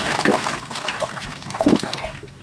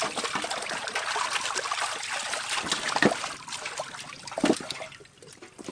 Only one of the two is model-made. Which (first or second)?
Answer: first